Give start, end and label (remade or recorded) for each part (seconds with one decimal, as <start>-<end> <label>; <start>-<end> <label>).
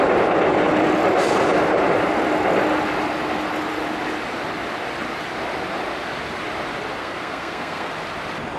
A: 0.0-7.0 recorded; 7.0-7.9 remade; 7.9-8.6 recorded